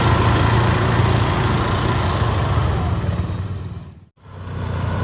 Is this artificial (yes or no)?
no